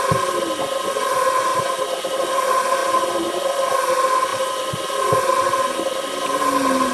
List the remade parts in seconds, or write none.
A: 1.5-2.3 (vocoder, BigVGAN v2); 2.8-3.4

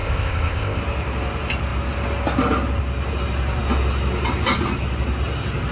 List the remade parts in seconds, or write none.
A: 0.0-0.8 (codec, ZipCodec)

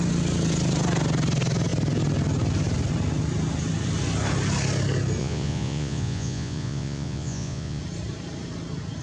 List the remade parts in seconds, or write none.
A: 5.2-7.8 (vocoder, Vocos)

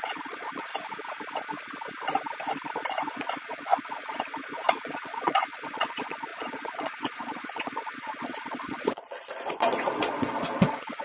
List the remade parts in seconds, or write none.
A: 0.0-0.7 (vocoder, Vocos); 3.1-11.0